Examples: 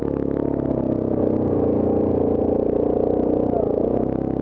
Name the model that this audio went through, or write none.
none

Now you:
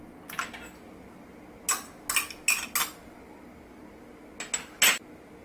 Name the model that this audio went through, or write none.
none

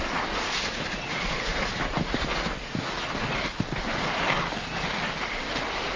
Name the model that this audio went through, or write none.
none